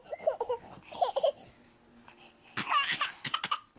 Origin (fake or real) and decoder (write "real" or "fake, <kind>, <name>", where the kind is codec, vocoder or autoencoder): real